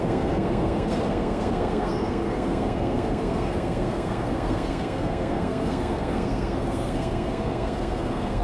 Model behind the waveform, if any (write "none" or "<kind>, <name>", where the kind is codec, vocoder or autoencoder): codec, SNAC